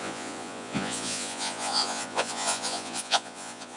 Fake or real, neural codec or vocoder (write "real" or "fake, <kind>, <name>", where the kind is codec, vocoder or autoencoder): fake, vocoder, Vocos